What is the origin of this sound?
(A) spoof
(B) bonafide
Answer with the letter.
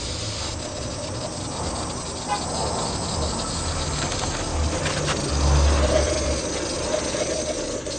B